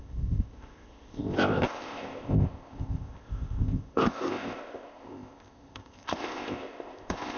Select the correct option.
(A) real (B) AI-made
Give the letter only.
B